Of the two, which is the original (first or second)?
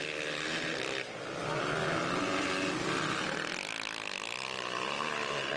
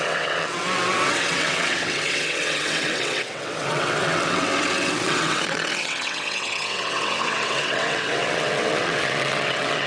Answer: first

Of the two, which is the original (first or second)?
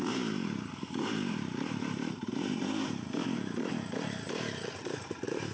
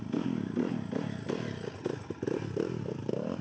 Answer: second